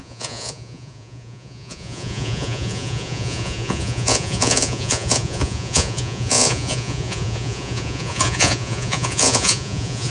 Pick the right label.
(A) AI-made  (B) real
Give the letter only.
A